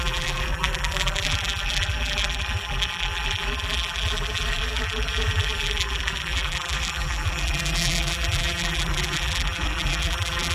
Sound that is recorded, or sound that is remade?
remade